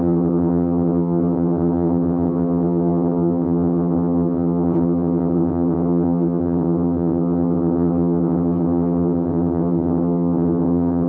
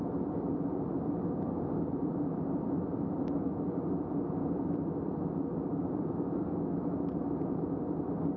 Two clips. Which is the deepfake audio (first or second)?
first